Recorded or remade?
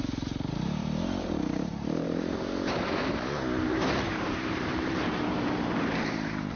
remade